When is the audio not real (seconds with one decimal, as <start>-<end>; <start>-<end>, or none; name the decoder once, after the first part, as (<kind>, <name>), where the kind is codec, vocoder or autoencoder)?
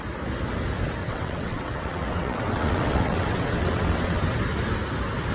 1.0-4.2 (vocoder, WaveNeXt)